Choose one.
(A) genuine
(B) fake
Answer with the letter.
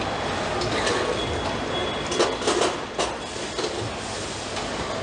A